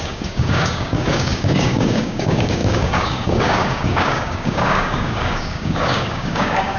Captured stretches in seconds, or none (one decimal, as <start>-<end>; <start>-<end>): none